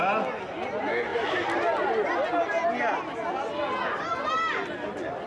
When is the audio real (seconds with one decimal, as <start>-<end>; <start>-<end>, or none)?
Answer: 0.0-5.3